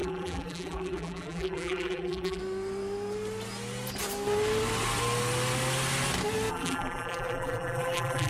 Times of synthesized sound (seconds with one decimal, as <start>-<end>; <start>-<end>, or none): 0.0-2.4; 6.5-8.3